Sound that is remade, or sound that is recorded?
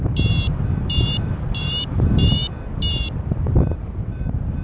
remade